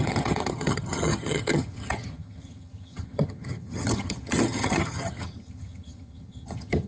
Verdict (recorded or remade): remade